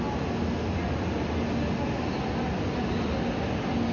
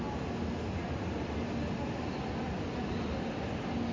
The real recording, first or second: first